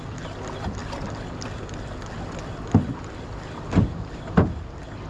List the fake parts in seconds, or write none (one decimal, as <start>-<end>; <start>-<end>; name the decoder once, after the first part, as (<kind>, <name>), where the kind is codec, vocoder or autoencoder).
none